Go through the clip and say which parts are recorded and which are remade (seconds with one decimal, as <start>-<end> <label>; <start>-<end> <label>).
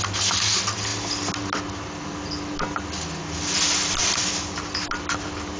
0.0-5.6 recorded